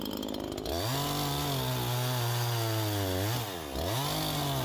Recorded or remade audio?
recorded